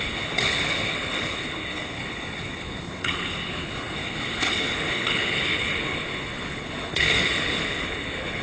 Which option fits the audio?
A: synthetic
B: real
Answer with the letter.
A